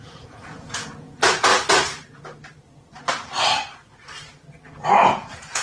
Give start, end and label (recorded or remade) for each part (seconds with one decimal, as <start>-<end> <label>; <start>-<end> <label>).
0.0-1.5 remade; 1.5-4.9 recorded; 4.9-5.6 remade